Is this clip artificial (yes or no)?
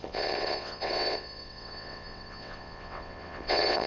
yes